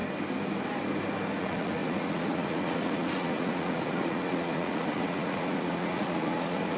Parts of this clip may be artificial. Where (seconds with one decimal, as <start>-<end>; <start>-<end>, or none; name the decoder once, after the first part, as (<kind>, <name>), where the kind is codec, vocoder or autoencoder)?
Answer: 1.4-6.8 (vocoder, Vocos)

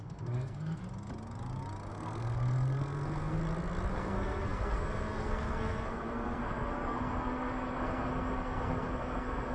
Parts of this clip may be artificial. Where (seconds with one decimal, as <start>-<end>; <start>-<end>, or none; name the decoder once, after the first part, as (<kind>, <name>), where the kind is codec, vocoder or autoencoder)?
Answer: 0.0-0.8 (codec, SNAC); 1.9-3.4; 3.9-9.5

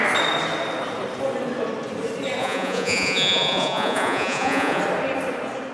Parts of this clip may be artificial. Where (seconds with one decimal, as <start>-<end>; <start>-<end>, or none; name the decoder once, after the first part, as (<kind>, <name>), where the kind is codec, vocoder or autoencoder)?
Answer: 2.4-4.8 (vocoder, Vocos)

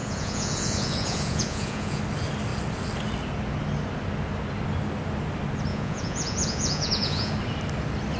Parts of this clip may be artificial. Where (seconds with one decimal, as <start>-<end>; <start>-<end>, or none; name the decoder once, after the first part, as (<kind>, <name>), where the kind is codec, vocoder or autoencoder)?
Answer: 0.0-2.0 (vocoder, Vocos); 5.7-7.3

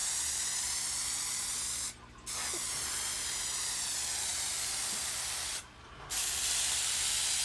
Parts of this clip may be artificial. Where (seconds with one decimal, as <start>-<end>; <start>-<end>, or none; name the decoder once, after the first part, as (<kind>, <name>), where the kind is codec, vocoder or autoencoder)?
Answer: 4.3-5.8 (vocoder, BigVGAN v2)

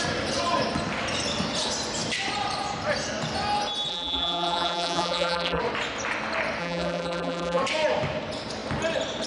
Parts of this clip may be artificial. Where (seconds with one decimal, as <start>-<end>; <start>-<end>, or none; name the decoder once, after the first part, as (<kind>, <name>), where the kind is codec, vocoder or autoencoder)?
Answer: 3.9-5.6 (vocoder, BigVGAN v2); 6.6-7.6